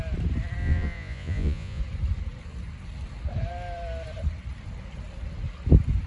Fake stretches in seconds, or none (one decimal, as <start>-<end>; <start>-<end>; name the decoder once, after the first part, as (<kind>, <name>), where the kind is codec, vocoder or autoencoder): 0.6-1.8 (vocoder, Vocos)